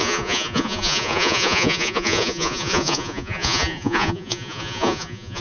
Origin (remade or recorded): remade